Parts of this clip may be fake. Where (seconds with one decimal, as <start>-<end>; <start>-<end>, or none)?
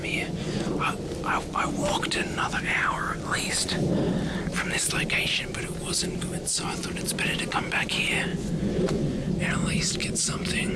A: 0.0-0.7; 8.3-9.3